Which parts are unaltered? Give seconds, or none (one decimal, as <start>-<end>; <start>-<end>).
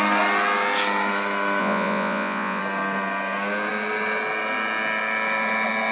0.0-1.6; 2.6-5.9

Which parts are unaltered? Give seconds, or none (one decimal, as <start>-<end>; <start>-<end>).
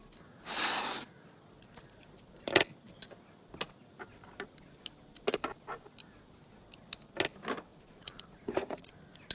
0.0-7.7; 8.9-9.3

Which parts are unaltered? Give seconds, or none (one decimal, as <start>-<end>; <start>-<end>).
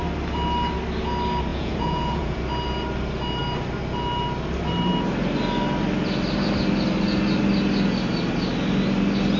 0.0-1.5; 2.4-9.4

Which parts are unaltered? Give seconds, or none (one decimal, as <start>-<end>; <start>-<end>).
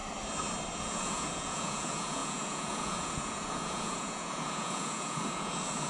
0.0-0.7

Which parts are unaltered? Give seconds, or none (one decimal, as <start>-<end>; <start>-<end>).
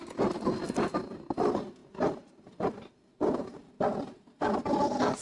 0.0-5.2